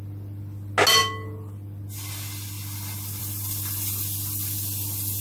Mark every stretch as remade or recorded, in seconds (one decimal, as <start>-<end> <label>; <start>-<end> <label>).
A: 0.0-5.2 recorded